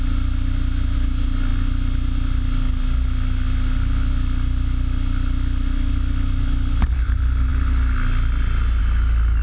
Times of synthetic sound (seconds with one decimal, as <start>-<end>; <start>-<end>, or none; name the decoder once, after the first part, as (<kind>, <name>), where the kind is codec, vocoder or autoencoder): none